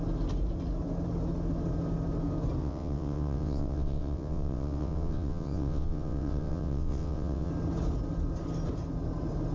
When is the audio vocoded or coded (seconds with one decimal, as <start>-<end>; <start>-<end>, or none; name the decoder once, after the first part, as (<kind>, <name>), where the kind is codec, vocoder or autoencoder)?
2.6-7.5 (vocoder, WaveNeXt)